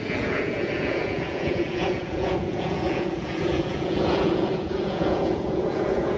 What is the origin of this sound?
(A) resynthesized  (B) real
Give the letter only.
A